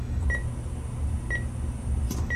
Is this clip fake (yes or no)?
no